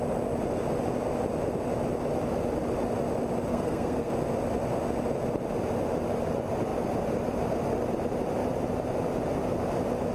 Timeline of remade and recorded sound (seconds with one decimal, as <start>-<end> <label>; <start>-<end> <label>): 0.0-3.5 recorded; 3.5-4.1 remade; 4.1-10.1 recorded